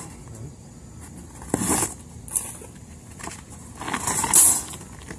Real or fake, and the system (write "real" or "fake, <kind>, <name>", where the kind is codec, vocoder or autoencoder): real